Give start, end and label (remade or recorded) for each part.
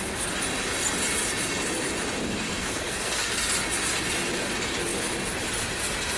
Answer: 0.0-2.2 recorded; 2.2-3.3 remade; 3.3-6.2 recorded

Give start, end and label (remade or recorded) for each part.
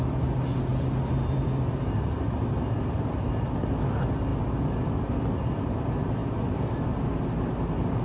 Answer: 0.0-8.0 recorded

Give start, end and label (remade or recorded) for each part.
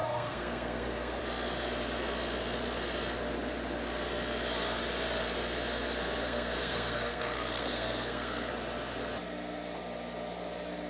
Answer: 0.0-1.2 remade; 1.2-6.2 recorded; 6.2-8.5 remade; 8.5-10.9 recorded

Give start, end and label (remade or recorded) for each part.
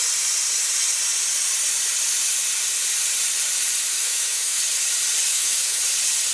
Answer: 0.0-3.9 recorded; 3.9-4.6 remade; 4.6-5.3 recorded; 5.3-5.8 remade; 5.8-6.3 recorded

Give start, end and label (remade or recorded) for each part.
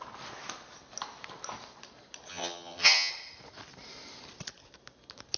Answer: 0.0-2.3 recorded; 2.3-3.1 remade; 3.1-5.4 recorded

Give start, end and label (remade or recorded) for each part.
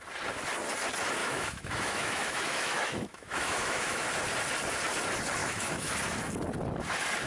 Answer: 0.0-1.2 recorded; 1.2-4.1 remade; 4.1-5.4 recorded; 5.4-5.9 remade; 5.9-7.3 recorded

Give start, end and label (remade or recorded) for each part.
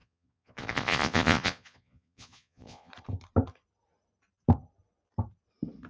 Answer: 0.0-2.9 remade; 2.9-5.9 recorded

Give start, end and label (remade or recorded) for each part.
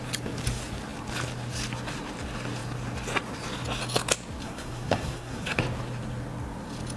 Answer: 0.0-4.4 recorded; 4.4-5.6 remade; 5.6-7.0 recorded